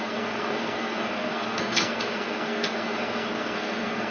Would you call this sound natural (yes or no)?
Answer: no